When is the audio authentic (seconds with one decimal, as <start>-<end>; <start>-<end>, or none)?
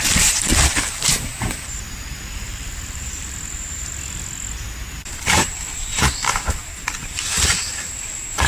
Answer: 0.0-0.5; 3.9-5.9; 6.5-7.0